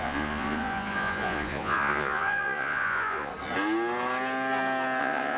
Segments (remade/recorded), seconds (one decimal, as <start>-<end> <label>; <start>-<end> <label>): 0.0-3.3 remade; 3.3-5.0 recorded; 5.0-5.4 remade